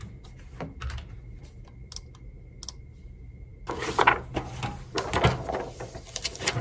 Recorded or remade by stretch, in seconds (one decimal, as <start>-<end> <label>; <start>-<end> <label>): 0.0-6.6 recorded